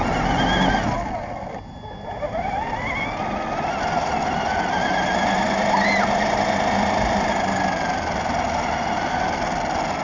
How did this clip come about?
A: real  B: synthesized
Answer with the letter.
A